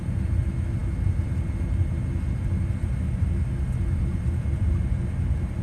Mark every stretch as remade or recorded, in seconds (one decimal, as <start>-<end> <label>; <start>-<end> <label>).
0.0-5.6 recorded

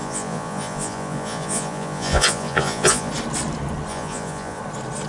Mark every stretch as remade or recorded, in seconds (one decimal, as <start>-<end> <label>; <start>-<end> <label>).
0.0-3.1 remade; 3.1-3.9 recorded; 3.9-4.6 remade; 4.6-5.1 recorded

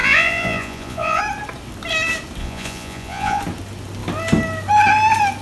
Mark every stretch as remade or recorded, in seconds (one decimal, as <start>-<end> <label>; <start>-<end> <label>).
0.0-1.2 remade; 1.2-2.4 recorded; 2.4-3.4 remade; 3.4-5.4 recorded

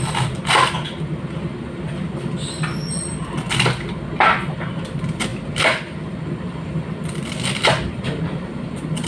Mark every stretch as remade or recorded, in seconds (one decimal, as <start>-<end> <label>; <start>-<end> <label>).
0.0-9.1 recorded

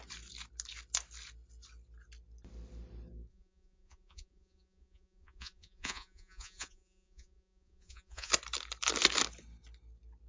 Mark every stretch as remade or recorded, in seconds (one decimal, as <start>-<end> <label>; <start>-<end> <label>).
0.0-3.3 recorded; 3.3-8.3 remade; 8.3-10.3 recorded

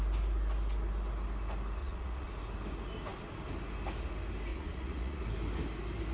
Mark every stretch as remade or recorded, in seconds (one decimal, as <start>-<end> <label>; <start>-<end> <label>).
0.0-1.8 recorded; 1.8-2.3 remade; 2.3-4.5 recorded; 4.5-5.2 remade; 5.2-6.1 recorded

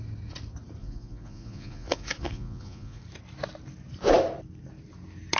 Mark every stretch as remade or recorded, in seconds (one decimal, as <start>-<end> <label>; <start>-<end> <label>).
0.0-0.8 recorded; 0.8-3.0 remade; 3.0-5.4 recorded